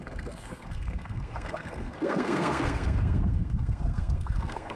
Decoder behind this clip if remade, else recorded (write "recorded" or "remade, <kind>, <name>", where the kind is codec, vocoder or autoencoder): remade, codec, SNAC